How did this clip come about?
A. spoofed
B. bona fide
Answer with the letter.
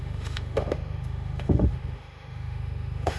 A